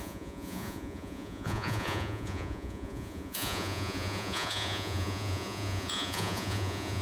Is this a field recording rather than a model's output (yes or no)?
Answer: no